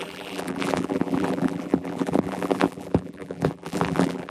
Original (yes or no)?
no